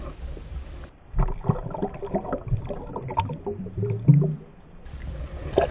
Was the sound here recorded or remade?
recorded